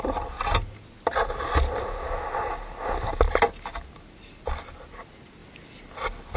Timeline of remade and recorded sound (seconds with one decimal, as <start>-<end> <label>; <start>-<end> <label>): 0.0-6.4 recorded